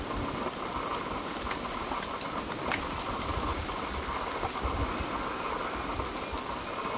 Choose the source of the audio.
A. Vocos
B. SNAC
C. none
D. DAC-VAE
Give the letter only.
C